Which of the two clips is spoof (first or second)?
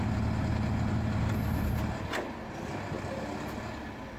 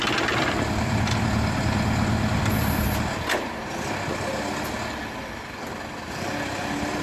second